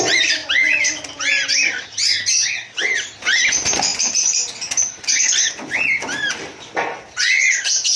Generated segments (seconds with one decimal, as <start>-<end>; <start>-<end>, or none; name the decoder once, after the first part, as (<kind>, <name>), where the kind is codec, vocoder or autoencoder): none